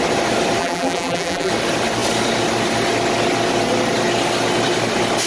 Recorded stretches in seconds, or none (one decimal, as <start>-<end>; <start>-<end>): 0.0-0.6; 1.5-5.3